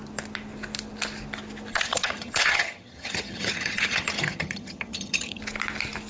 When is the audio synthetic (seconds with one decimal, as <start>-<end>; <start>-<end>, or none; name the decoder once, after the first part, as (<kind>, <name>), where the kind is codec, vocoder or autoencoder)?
1.7-5.4 (vocoder, HiFi-GAN)